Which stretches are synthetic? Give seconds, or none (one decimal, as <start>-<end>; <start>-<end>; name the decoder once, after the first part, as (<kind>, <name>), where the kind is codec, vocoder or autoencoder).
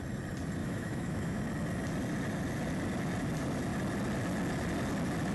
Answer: 0.6-1.4 (autoencoder, DAC-VAE)